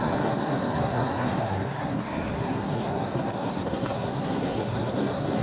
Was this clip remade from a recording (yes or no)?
yes